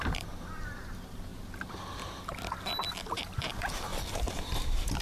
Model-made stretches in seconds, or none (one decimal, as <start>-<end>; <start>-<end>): 0.0-1.3; 2.9-5.0